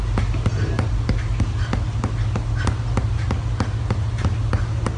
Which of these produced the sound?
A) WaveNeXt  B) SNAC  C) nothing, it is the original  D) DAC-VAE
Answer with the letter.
C